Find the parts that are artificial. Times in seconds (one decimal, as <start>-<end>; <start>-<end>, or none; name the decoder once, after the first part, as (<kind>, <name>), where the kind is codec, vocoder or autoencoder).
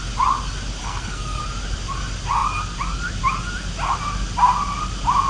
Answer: 0.8-1.4 (codec, SNAC)